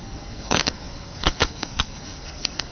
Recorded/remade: remade